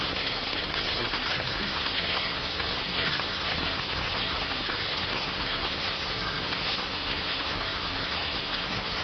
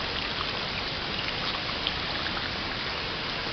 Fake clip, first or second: first